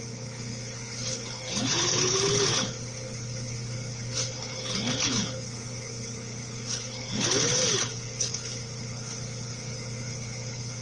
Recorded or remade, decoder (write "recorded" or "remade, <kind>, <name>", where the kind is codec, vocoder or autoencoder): remade, codec, HILCodec